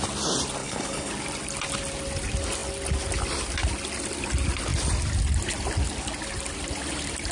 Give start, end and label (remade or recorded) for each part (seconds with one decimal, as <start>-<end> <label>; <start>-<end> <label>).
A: 0.0-0.6 recorded; 0.6-1.1 remade; 1.1-7.3 recorded